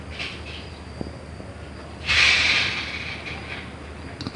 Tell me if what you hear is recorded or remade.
recorded